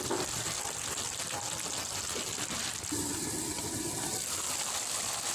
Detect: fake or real real